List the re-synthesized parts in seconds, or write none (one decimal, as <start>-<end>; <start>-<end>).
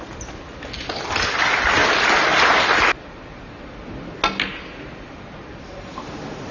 none